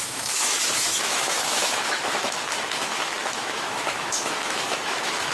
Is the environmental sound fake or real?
fake